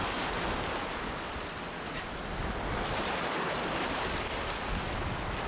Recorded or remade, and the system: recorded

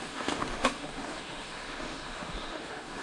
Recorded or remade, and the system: remade, autoencoder, DAC-VAE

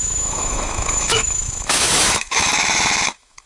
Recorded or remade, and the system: remade, autoencoder, DAC-VAE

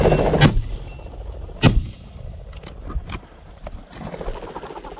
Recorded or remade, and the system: recorded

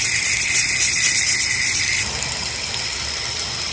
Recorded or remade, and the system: recorded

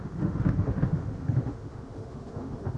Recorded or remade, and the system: remade, autoencoder, DAC-VAE